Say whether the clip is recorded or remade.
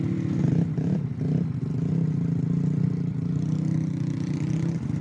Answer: recorded